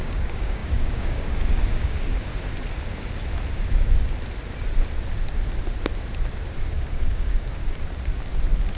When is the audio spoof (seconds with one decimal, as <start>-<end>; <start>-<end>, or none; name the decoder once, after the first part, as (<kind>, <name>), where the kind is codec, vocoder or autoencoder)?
0.0-2.3 (codec, DAC); 6.7-7.6